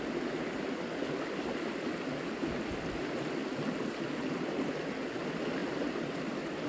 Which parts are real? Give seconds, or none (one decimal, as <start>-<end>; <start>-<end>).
0.0-6.7